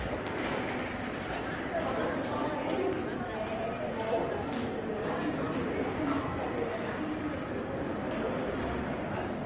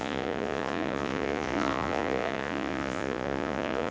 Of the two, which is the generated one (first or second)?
second